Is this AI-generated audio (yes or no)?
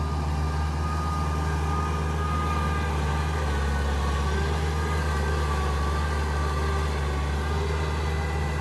no